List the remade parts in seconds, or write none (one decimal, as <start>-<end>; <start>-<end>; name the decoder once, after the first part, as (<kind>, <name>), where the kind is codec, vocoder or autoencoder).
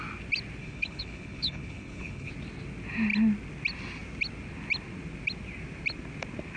0.6-2.3 (codec, HILCodec)